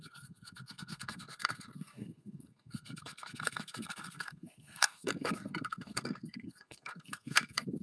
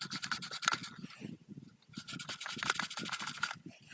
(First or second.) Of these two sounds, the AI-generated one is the first